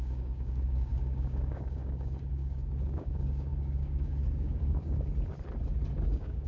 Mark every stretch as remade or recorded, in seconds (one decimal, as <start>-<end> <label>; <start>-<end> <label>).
0.0-5.1 remade; 5.1-6.1 recorded; 6.1-6.5 remade